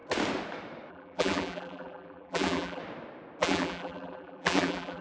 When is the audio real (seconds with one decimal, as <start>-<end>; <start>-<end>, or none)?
0.0-0.9; 2.8-3.4